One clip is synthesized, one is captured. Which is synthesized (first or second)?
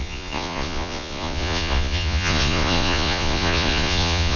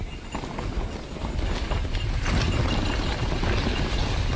first